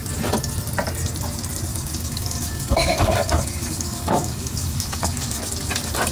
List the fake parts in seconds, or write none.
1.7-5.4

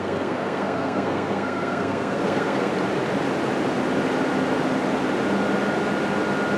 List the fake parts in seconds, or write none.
0.0-2.7

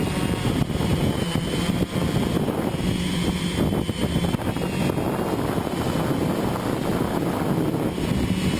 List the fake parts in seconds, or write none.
none

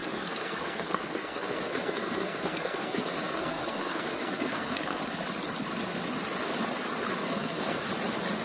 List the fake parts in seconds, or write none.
0.0-5.0; 7.2-7.8

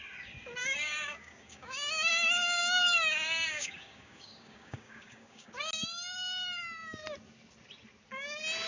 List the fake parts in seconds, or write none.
0.6-2.1; 2.6-5.5

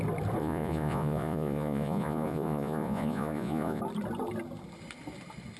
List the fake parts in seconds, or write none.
0.4-3.8

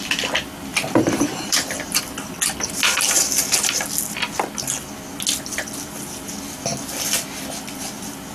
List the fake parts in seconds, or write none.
0.7-2.0